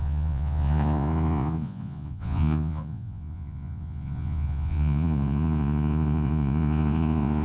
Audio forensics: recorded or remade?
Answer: remade